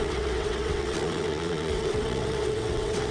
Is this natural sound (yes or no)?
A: no